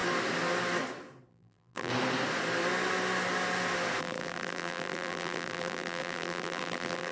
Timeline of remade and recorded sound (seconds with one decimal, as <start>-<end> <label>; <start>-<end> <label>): 0.0-1.3 recorded; 1.3-1.9 remade; 1.9-4.0 recorded; 4.0-7.1 remade